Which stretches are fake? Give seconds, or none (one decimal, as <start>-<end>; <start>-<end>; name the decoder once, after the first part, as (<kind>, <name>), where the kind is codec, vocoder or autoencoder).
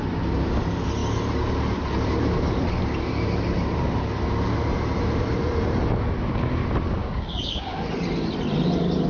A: 7.0-7.8 (codec, DAC)